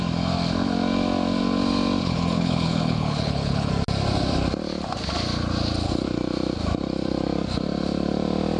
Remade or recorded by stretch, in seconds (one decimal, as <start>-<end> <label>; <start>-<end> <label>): 0.0-2.0 recorded; 2.0-3.7 remade; 3.7-8.6 recorded